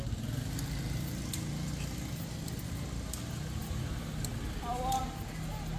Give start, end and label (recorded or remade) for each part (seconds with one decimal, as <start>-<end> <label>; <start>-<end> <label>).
0.0-3.6 recorded; 3.6-5.0 remade; 5.0-5.8 recorded